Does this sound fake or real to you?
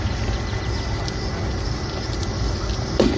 real